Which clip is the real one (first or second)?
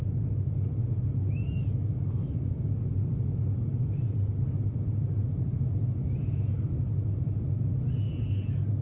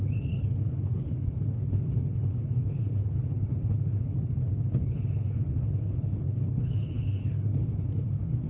first